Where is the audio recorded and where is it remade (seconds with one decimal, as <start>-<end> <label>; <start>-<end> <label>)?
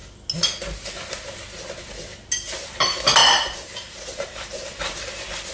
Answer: 0.0-3.2 recorded; 3.2-4.8 remade; 4.8-5.5 recorded